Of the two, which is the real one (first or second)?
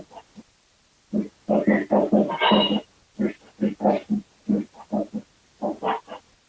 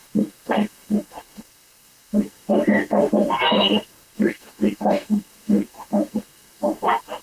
first